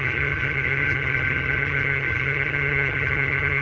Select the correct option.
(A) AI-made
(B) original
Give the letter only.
A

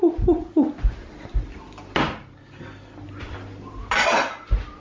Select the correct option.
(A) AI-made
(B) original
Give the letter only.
B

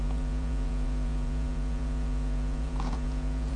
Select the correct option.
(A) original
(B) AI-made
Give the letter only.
B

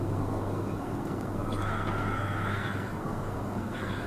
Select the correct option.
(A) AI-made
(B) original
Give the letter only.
A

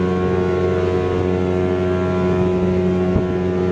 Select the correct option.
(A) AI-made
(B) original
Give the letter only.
B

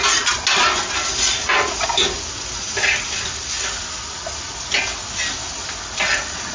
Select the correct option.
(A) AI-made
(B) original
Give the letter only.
B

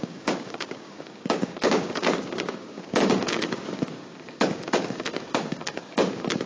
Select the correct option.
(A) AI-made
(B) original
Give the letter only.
A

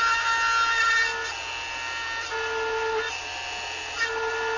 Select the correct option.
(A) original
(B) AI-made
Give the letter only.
A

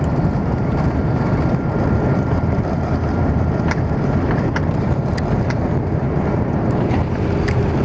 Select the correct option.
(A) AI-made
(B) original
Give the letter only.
A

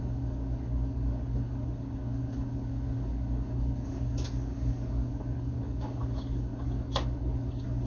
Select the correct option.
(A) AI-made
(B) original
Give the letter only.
A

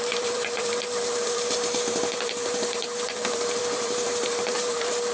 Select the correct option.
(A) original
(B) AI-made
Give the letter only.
B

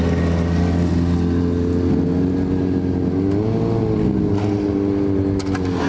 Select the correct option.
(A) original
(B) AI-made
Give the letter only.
A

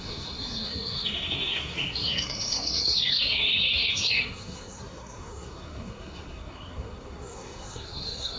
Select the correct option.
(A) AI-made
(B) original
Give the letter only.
A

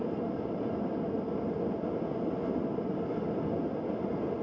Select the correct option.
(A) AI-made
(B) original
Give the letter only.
B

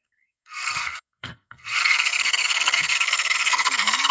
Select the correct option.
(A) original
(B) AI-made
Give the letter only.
B